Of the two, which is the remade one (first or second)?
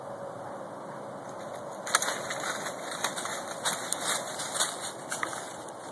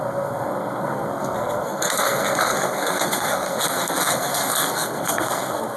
second